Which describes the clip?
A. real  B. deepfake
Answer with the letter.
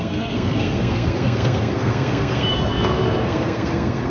B